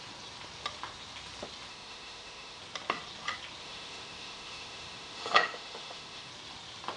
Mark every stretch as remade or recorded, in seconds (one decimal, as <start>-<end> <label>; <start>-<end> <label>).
0.0-1.7 recorded; 1.7-2.6 remade; 2.6-3.6 recorded; 3.6-6.3 remade; 6.3-7.0 recorded

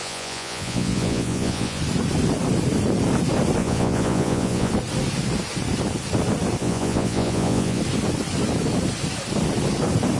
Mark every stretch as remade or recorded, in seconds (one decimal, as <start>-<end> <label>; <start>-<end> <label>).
0.0-1.8 remade; 1.8-3.6 recorded; 3.6-4.7 remade; 4.7-6.6 recorded; 6.6-7.8 remade; 7.8-10.2 recorded

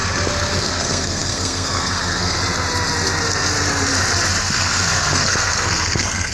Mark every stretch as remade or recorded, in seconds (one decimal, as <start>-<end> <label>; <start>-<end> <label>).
0.0-0.6 recorded; 0.6-2.4 remade; 2.4-4.4 recorded; 4.4-6.3 remade

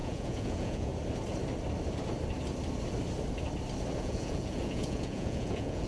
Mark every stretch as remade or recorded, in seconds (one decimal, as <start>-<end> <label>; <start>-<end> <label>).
0.0-0.9 remade; 0.9-4.0 recorded; 4.0-5.9 remade

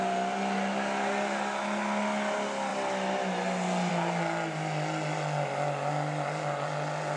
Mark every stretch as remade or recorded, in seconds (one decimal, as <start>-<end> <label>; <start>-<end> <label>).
0.0-7.2 recorded